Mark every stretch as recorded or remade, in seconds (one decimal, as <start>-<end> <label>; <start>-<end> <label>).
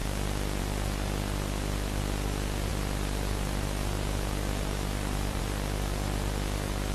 0.0-6.9 recorded